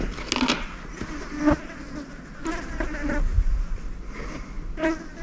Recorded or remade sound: recorded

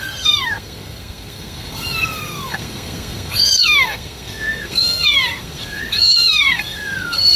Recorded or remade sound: remade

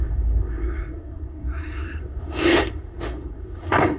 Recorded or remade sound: remade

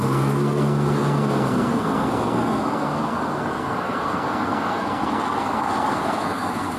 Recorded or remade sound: remade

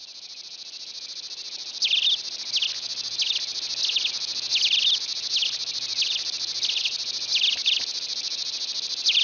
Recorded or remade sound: recorded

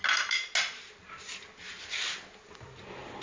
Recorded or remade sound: recorded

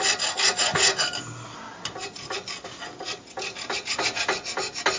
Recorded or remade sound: recorded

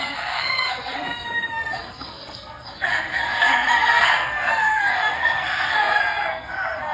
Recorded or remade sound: remade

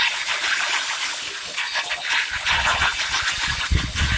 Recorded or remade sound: recorded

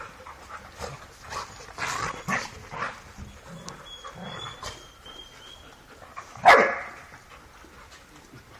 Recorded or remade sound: recorded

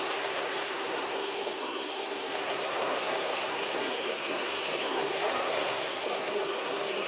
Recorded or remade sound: remade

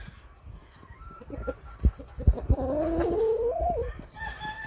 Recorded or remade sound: recorded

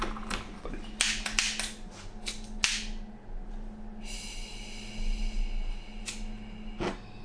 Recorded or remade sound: recorded